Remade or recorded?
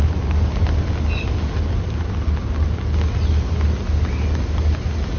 recorded